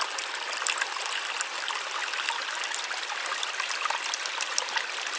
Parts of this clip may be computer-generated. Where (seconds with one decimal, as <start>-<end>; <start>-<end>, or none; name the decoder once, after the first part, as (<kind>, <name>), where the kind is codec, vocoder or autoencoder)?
none